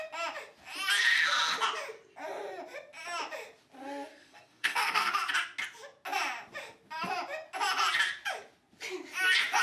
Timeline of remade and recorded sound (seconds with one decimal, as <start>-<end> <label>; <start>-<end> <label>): 0.0-4.1 recorded; 4.1-5.1 remade; 5.1-9.6 recorded